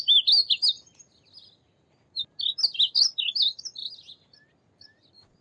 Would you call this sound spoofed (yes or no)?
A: no